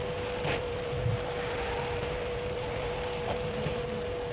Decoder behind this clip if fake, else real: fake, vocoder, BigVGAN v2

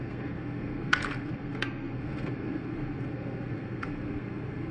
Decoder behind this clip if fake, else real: fake, codec, SNAC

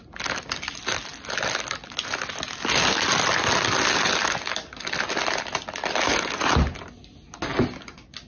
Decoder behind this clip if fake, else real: real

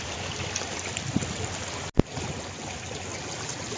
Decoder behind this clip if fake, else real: real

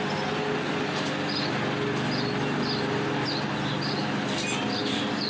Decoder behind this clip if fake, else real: real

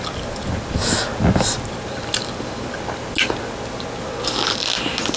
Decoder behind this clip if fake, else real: real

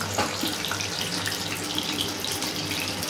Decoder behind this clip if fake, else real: real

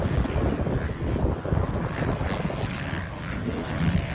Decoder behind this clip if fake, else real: real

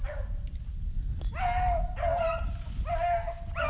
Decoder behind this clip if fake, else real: real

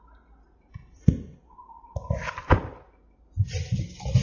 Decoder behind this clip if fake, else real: real